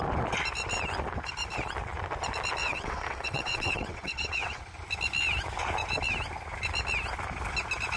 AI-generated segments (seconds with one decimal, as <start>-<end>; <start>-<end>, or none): 2.6-4.6